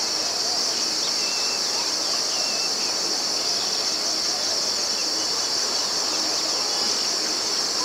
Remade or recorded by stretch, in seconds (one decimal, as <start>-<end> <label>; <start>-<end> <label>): 0.0-5.0 recorded; 5.0-5.8 remade; 5.8-7.8 recorded